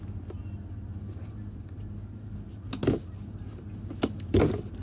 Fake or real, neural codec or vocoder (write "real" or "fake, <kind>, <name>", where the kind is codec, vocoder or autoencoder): real